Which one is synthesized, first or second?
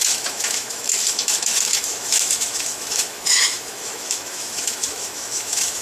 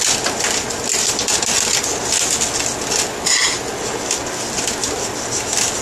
first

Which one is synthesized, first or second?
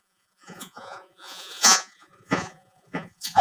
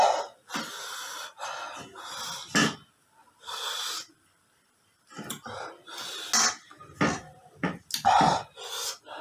first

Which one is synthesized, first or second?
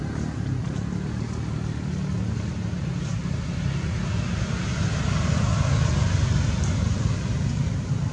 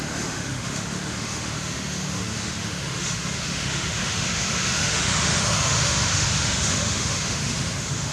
second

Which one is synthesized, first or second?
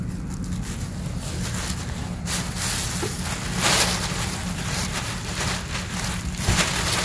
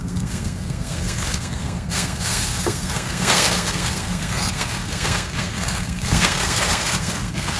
second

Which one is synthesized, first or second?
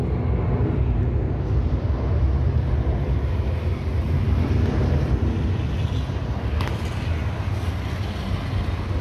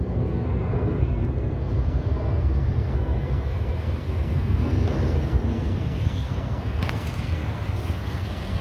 second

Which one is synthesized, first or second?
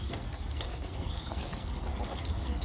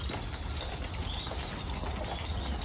first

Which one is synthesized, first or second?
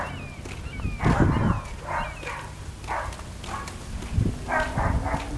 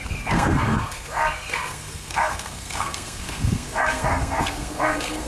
second